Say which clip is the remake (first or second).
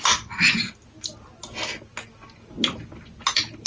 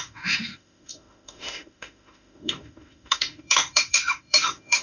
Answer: second